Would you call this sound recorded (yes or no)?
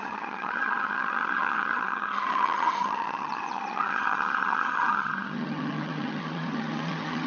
no